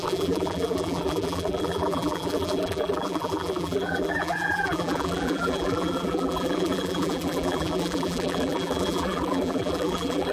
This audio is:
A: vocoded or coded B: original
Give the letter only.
A